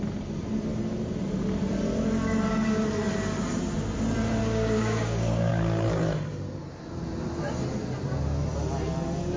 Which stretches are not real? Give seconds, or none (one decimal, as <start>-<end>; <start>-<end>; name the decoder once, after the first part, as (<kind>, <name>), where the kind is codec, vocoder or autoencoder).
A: 4.4-5.5 (codec, DAC)